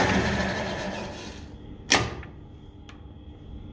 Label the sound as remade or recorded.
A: recorded